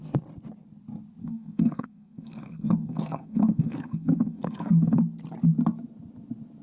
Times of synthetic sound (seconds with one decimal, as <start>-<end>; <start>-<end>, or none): 1.2-5.0

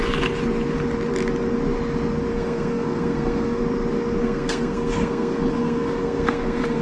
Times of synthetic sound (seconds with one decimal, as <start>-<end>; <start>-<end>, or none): 2.3-3.6; 4.2-6.8

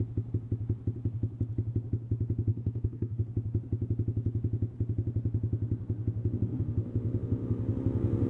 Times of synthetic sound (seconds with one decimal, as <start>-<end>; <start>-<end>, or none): 2.5-3.2

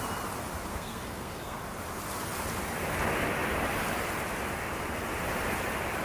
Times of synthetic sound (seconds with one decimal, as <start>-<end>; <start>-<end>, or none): 0.7-1.6